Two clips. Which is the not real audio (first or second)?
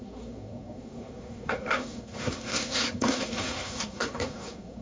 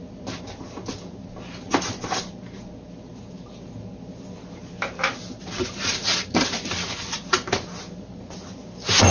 first